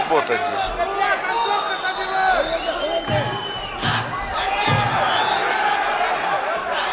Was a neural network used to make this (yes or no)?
no